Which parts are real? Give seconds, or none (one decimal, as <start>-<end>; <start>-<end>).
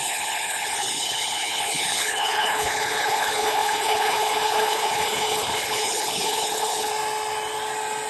6.9-8.1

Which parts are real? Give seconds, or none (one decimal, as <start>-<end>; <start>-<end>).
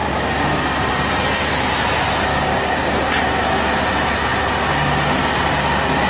0.0-2.3; 3.0-6.1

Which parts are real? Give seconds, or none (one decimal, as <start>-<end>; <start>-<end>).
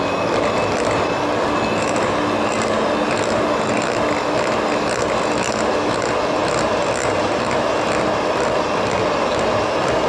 0.0-10.1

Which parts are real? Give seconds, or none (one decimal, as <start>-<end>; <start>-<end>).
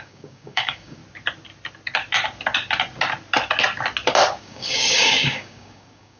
1.0-4.4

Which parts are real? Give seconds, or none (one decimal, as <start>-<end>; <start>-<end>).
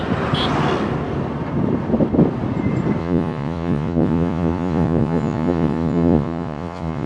0.0-3.0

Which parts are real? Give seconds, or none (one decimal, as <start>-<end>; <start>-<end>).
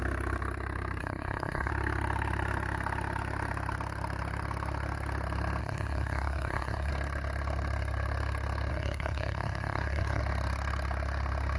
0.0-1.0; 1.7-5.6; 6.9-8.7; 10.2-11.6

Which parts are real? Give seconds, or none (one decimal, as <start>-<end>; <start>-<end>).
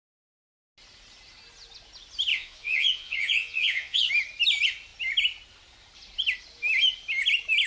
0.0-2.3; 4.1-7.7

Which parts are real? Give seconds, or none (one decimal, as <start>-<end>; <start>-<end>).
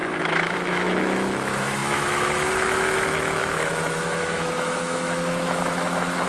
none